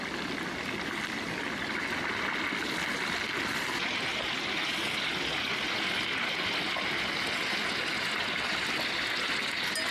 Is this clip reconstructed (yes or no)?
no